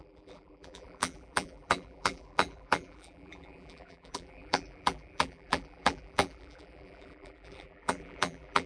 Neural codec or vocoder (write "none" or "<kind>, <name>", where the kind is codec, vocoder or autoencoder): vocoder, BigVGAN v2